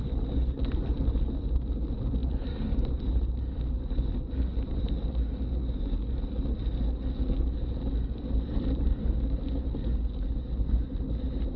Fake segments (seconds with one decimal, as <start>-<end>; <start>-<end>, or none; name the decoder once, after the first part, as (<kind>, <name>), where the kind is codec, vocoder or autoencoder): none